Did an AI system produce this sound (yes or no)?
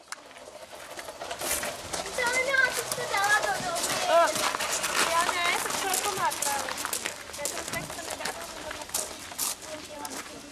no